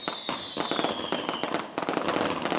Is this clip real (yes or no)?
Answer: yes